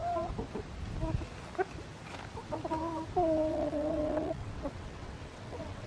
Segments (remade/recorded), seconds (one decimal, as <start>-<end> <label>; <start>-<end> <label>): 0.0-3.5 recorded; 3.5-5.9 remade